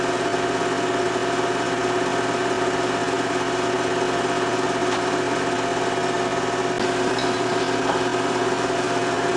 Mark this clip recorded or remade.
recorded